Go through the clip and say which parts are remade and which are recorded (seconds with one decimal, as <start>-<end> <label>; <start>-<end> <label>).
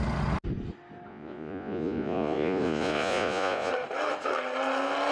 0.0-1.1 recorded; 1.1-3.7 remade; 3.7-5.1 recorded